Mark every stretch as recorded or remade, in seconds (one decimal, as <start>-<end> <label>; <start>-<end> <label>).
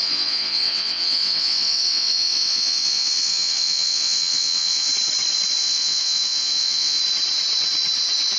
0.0-4.9 remade; 4.9-5.6 recorded; 5.6-7.0 remade; 7.0-8.4 recorded